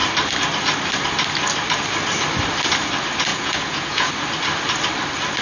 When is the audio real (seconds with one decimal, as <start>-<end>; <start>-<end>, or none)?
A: 0.0-3.3; 4.1-5.4